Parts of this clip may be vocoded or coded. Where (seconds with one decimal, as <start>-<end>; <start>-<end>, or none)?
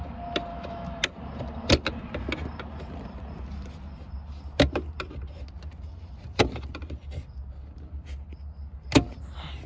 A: 0.5-1.0